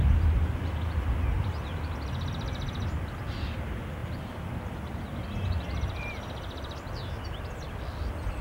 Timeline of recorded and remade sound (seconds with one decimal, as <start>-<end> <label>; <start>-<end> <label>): 0.0-8.4 recorded